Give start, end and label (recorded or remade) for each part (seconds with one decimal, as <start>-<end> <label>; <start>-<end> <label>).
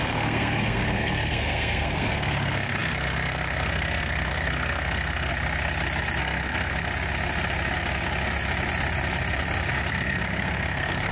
0.0-5.3 remade; 5.3-6.2 recorded; 6.2-6.9 remade; 6.9-9.9 recorded; 9.9-11.1 remade